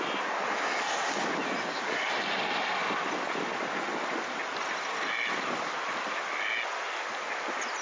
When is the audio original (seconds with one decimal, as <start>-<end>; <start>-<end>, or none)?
0.0-7.8